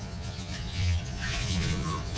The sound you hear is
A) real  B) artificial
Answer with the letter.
B